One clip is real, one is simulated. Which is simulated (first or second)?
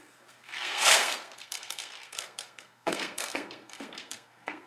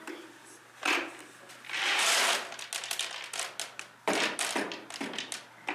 first